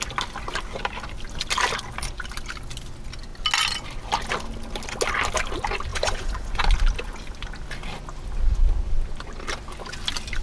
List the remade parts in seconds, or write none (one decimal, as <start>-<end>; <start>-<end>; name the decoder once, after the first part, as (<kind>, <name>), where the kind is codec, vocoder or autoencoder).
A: 5.9-6.6 (vocoder, Vocos)